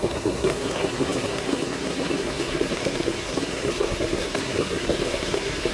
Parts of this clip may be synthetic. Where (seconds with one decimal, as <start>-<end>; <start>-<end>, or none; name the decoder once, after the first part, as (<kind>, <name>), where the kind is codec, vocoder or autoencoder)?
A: 0.0-5.7 (codec, SNAC)